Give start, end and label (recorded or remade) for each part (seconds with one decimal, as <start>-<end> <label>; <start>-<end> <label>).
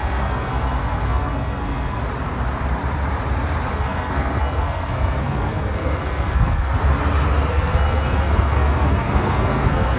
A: 0.0-2.0 remade; 2.0-3.7 recorded; 3.7-6.7 remade; 6.7-7.5 recorded; 7.5-10.0 remade